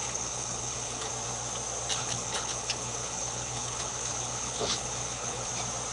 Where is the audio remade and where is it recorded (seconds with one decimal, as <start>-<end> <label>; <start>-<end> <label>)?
0.0-1.1 remade; 1.1-2.0 recorded; 2.0-5.5 remade; 5.5-5.9 recorded